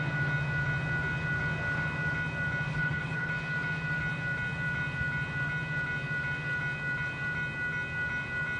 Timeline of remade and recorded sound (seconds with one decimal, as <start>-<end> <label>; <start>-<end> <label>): 0.0-2.7 recorded; 2.7-3.3 remade; 3.3-8.6 recorded